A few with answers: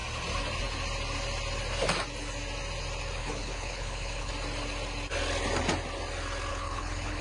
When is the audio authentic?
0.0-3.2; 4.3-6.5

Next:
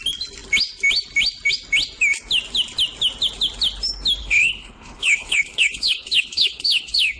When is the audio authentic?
0.0-4.2

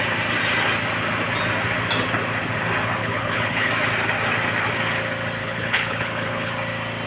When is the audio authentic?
0.0-3.0; 3.7-5.4; 6.5-7.1

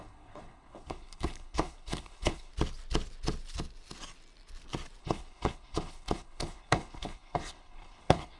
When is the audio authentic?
2.5-5.0